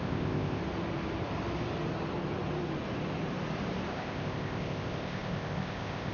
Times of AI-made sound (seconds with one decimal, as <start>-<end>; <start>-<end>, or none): 0.0-0.6; 3.9-6.1